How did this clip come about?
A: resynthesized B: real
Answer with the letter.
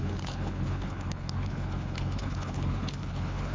A